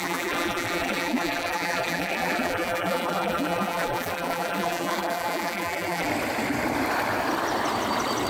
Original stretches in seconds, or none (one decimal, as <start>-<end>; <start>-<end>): 6.1-8.3